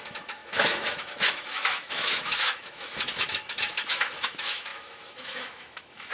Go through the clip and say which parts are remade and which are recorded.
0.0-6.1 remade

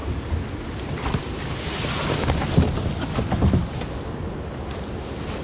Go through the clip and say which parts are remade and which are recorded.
0.0-5.4 recorded

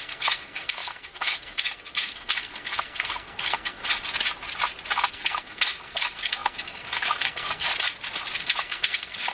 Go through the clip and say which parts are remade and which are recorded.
0.0-3.8 remade; 3.8-5.1 recorded; 5.1-7.7 remade; 7.7-8.4 recorded; 8.4-9.3 remade

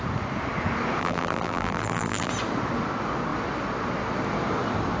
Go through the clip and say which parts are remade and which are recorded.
0.0-1.0 recorded; 1.0-2.3 remade; 2.3-5.0 recorded

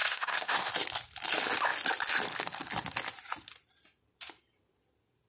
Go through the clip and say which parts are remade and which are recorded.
0.0-0.7 remade; 0.7-5.3 recorded

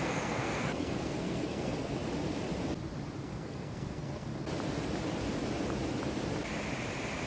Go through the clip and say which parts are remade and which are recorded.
0.0-2.0 remade; 2.0-3.2 recorded; 3.2-4.3 remade; 4.3-7.3 recorded